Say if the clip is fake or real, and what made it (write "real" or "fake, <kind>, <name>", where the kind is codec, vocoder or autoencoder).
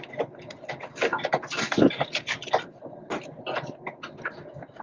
real